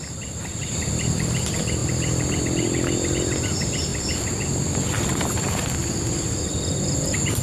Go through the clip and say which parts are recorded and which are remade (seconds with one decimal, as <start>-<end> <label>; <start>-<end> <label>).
0.0-7.4 recorded

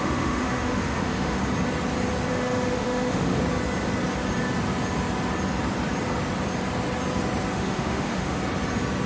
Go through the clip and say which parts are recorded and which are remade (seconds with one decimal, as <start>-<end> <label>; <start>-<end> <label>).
0.0-1.4 remade; 1.4-2.3 recorded; 2.3-3.4 remade; 3.4-7.5 recorded; 7.5-8.4 remade; 8.4-9.1 recorded

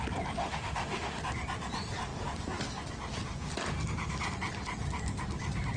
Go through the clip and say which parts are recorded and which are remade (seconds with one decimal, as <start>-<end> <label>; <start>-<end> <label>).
0.0-0.4 recorded; 0.4-1.2 remade; 1.2-5.8 recorded

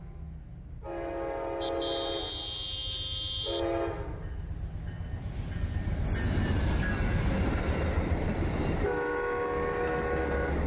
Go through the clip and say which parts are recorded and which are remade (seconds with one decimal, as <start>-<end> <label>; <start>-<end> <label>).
0.0-10.7 recorded

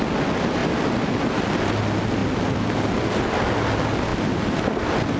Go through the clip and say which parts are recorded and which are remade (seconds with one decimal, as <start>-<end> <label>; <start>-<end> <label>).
0.0-5.2 recorded

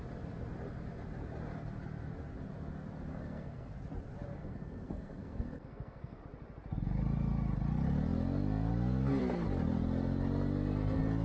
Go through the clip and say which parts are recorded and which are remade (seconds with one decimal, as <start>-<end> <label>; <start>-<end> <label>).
0.0-3.1 recorded; 3.1-3.7 remade; 3.7-4.4 recorded; 4.4-6.2 remade; 6.2-11.2 recorded